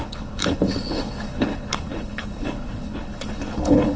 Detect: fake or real fake